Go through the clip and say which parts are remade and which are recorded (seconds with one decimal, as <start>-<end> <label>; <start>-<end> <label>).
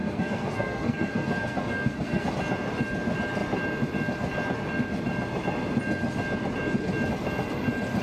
0.0-2.3 remade; 2.3-8.0 recorded